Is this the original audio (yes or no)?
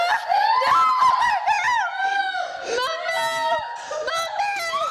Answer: yes